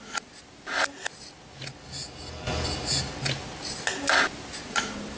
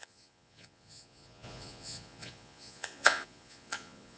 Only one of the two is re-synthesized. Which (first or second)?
second